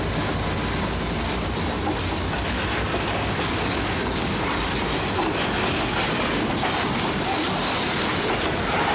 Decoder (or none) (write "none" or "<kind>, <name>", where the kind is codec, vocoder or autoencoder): none